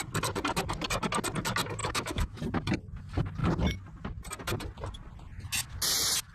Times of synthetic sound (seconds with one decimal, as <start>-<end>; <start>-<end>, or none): 1.8-2.4